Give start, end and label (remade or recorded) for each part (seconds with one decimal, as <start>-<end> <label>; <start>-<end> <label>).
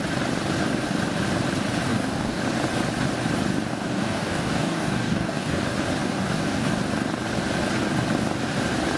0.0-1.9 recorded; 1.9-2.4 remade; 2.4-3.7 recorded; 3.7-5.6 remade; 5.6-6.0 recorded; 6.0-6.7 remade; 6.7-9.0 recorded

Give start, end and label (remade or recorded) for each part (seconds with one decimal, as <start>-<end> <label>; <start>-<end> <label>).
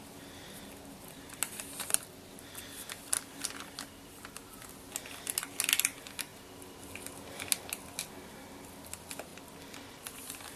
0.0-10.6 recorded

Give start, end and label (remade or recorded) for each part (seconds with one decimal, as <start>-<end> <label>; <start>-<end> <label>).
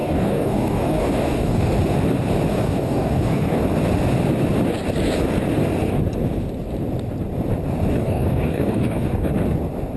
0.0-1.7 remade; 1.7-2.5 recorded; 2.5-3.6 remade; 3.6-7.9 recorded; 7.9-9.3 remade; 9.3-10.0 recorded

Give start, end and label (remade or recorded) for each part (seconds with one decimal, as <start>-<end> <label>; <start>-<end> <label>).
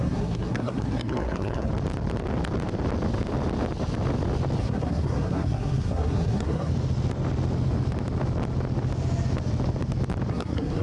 0.0-1.7 remade; 1.7-4.6 recorded; 4.6-6.7 remade; 6.7-10.3 recorded; 10.3-10.8 remade